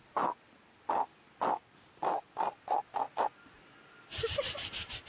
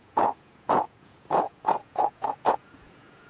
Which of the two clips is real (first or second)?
first